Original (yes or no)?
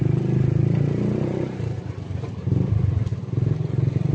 yes